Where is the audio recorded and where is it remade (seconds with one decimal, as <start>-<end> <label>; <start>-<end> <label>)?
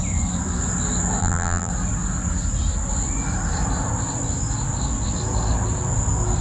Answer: 0.0-1.2 recorded; 1.2-1.7 remade; 1.7-6.4 recorded